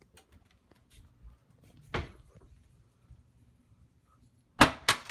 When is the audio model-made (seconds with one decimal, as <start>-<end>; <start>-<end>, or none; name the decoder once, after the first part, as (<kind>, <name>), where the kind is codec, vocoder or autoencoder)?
none